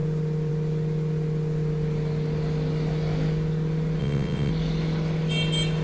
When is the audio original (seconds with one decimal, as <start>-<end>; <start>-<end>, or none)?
0.0-4.0; 4.5-5.8